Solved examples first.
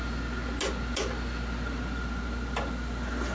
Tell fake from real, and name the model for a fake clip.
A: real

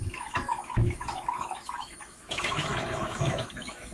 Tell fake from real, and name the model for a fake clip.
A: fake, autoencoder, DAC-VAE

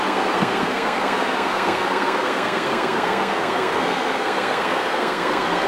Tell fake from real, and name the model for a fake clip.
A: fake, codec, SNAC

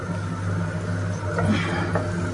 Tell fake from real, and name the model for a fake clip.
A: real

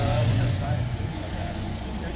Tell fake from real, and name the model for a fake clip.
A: fake, vocoder, Vocos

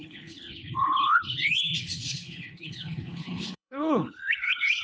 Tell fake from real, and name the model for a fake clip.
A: fake, codec, HILCodec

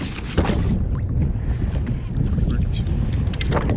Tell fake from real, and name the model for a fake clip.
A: real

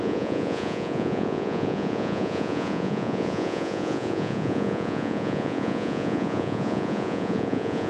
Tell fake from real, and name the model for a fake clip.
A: fake, vocoder, Vocos